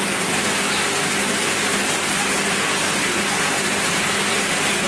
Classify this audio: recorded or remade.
recorded